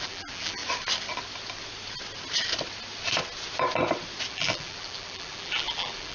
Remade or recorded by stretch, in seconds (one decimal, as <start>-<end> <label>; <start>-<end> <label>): 0.0-0.6 remade; 0.6-4.3 recorded; 4.3-6.1 remade